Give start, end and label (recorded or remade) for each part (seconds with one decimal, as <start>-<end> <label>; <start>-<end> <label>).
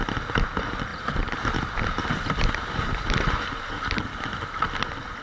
0.0-0.9 recorded; 0.9-4.0 remade; 4.0-5.2 recorded